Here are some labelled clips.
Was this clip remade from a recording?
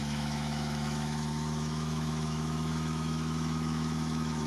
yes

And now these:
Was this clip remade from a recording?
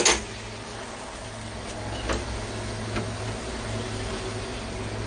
no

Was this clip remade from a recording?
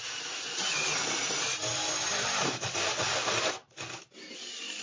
no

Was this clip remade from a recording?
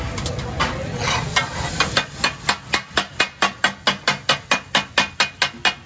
no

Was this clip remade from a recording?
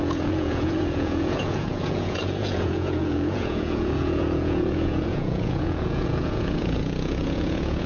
yes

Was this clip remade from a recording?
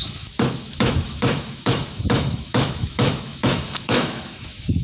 yes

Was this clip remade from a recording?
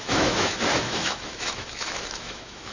yes